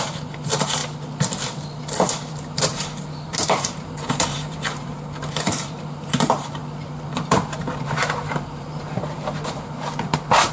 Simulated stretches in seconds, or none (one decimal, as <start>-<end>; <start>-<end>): 0.0-0.8; 2.3-6.6; 7.1-10.5